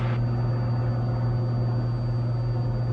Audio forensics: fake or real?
real